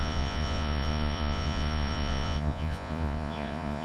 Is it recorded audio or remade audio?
remade